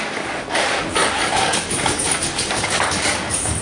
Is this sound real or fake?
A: fake